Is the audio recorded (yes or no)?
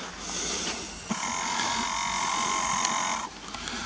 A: yes